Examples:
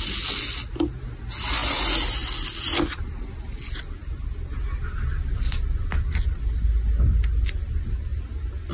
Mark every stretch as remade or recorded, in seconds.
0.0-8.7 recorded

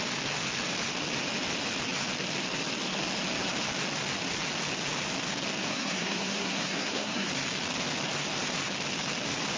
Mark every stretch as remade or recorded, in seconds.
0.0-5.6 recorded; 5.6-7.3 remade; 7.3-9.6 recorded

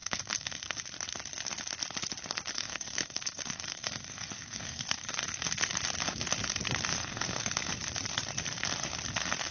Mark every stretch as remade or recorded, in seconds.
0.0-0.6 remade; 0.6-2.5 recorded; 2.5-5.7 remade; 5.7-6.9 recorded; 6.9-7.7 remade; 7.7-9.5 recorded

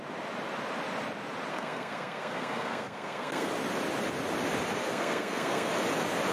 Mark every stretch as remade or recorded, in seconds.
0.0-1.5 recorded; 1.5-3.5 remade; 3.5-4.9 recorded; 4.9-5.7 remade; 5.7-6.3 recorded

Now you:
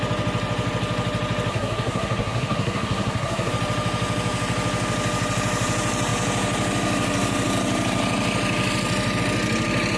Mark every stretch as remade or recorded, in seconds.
0.0-1.5 recorded; 1.5-3.5 remade; 3.5-10.0 recorded

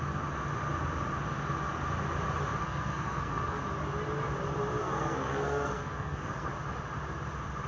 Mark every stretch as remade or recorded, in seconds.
0.0-2.6 recorded; 2.6-3.6 remade; 3.6-4.8 recorded; 4.8-6.5 remade; 6.5-7.7 recorded